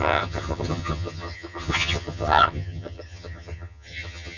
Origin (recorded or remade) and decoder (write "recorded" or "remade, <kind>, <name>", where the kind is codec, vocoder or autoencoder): remade, vocoder, HiFi-GAN